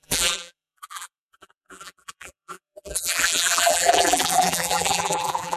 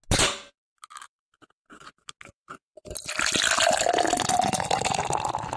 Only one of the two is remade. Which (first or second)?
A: first